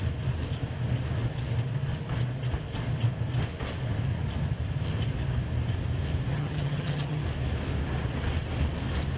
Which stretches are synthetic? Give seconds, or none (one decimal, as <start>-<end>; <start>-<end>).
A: 6.3-7.2